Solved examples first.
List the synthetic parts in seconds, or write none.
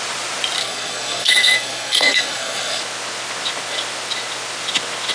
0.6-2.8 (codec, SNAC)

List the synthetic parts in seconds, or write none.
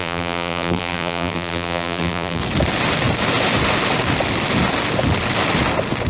0.0-2.4 (vocoder, BigVGAN v2)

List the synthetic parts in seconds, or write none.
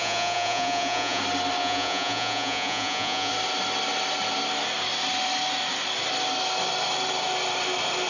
0.0-1.2 (vocoder, Vocos); 1.6-3.3